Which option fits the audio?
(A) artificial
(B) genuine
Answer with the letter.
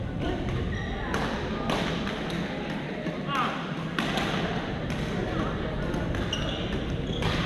B